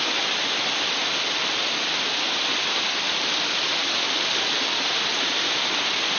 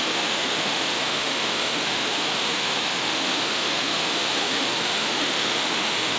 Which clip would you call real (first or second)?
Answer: first